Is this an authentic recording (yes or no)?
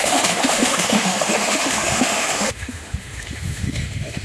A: no